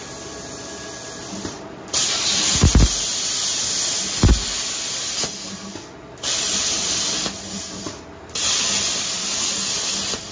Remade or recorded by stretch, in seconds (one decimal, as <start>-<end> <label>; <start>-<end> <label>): 0.0-10.3 recorded